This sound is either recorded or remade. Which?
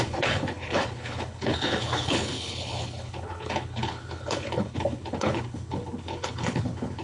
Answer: remade